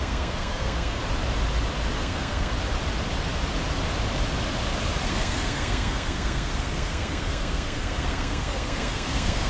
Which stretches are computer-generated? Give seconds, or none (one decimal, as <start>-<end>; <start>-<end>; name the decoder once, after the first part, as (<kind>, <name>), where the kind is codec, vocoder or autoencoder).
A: 0.0-1.0 (codec, SNAC); 2.0-2.5; 5.1-9.5